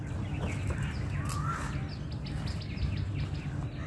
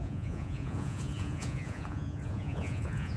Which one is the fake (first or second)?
second